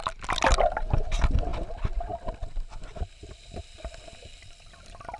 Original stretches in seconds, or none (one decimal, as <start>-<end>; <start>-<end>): 0.0-5.2